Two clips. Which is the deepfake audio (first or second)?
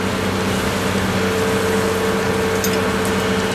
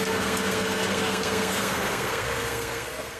second